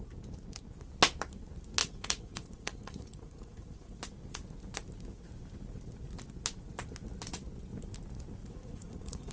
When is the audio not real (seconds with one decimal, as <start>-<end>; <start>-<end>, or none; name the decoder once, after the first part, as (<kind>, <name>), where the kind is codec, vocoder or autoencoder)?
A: 1.8-4.0 (vocoder, Vocos); 8.4-9.3